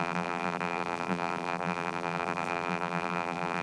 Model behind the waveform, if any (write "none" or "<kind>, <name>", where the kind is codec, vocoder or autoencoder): vocoder, BigVGAN v2